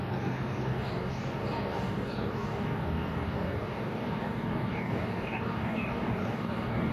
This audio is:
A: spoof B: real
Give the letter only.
A